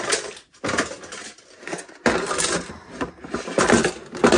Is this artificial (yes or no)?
no